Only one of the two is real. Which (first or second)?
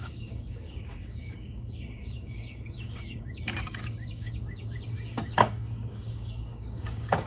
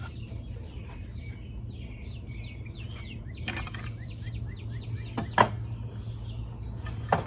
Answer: second